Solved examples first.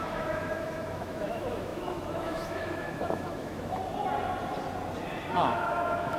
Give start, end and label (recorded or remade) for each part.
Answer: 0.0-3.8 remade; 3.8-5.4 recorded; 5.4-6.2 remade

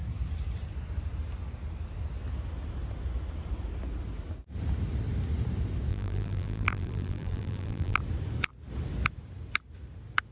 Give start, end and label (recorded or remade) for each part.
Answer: 0.0-5.9 recorded; 5.9-8.0 remade; 8.0-10.3 recorded

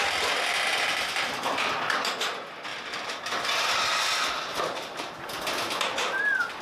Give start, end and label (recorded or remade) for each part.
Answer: 0.0-2.7 recorded; 2.7-3.4 remade; 3.4-6.6 recorded